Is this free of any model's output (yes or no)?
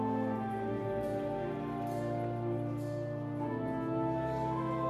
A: yes